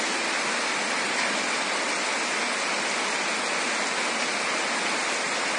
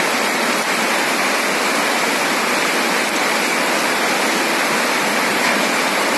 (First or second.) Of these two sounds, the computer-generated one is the second